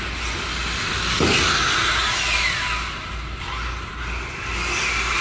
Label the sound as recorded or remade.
recorded